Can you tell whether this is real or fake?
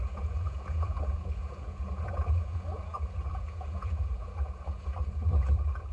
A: fake